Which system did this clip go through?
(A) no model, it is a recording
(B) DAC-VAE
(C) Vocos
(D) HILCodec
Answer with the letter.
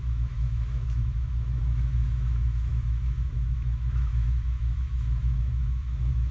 B